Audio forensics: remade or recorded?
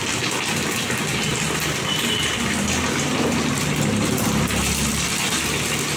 remade